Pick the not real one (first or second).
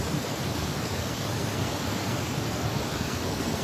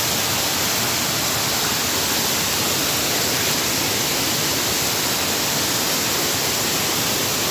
first